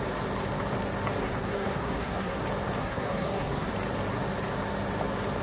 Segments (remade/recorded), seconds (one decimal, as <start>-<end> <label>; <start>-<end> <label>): 0.0-1.2 recorded; 1.2-2.4 remade; 2.4-2.8 recorded; 2.8-3.7 remade; 3.7-5.4 recorded